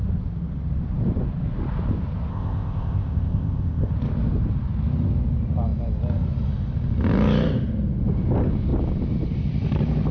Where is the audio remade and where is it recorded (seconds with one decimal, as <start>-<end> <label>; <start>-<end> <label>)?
0.0-2.3 recorded; 2.3-3.9 remade; 3.9-10.1 recorded

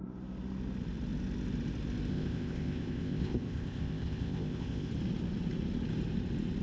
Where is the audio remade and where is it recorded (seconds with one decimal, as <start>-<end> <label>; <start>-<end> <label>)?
0.0-2.1 recorded; 2.1-4.9 remade; 4.9-6.6 recorded

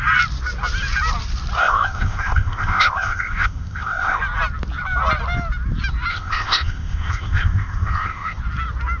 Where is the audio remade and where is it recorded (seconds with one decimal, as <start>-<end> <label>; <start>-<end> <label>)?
0.0-1.6 recorded; 1.6-4.2 remade; 4.2-6.1 recorded; 6.1-8.4 remade; 8.4-9.0 recorded

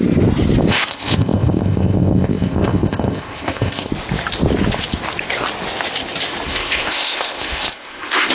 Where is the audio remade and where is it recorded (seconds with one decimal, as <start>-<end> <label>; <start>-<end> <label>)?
0.0-0.7 recorded; 0.7-3.9 remade; 3.9-6.5 recorded; 6.5-8.3 remade